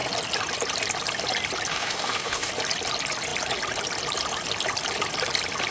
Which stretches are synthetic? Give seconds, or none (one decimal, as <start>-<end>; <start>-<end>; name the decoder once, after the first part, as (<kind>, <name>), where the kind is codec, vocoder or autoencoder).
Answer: 1.7-2.5 (codec, DAC)